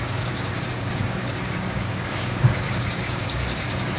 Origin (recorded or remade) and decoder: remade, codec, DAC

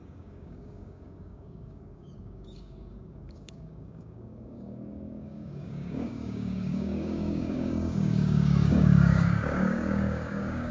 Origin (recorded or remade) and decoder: remade, codec, DAC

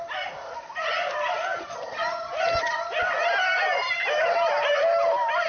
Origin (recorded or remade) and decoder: recorded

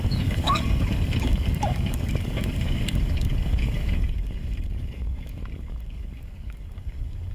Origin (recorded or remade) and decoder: remade, codec, DAC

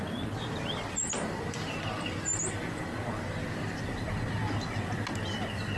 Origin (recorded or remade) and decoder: recorded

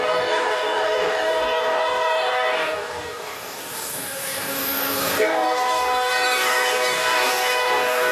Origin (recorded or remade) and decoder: remade, codec, DAC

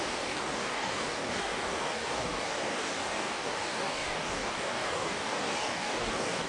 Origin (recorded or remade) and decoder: remade, codec, DAC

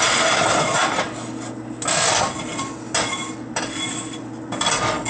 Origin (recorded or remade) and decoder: recorded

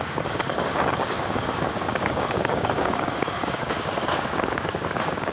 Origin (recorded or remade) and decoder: remade, codec, DAC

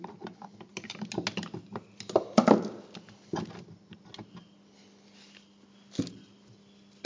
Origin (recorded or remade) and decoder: recorded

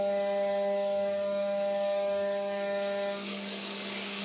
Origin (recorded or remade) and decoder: remade, codec, DAC